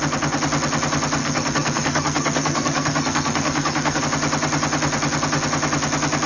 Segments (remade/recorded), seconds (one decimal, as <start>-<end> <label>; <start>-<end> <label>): 0.0-1.2 recorded; 1.2-4.0 remade; 4.0-6.3 recorded